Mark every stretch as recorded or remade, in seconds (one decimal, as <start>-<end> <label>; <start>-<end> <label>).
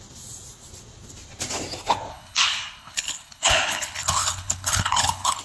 0.0-2.1 recorded; 2.1-5.4 remade